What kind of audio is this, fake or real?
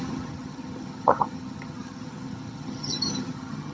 fake